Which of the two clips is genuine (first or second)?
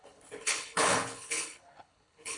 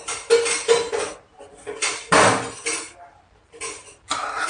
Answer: second